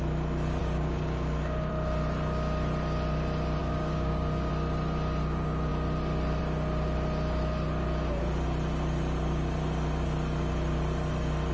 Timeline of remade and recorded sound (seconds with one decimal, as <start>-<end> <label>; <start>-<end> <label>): 0.0-0.6 recorded; 0.6-1.7 remade; 1.7-3.6 recorded; 3.6-4.5 remade; 4.5-11.5 recorded